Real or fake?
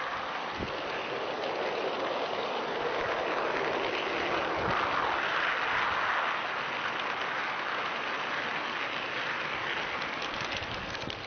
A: real